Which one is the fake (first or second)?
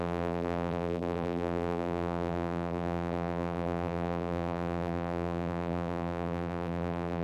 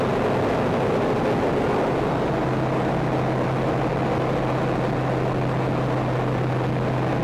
first